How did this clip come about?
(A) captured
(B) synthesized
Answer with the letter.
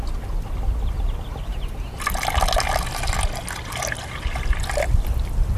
A